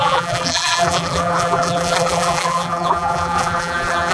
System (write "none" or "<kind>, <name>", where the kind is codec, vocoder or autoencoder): vocoder, BigVGAN v2